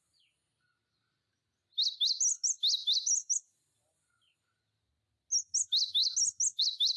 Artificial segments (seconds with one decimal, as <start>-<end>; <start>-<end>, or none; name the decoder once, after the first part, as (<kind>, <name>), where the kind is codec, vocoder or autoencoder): none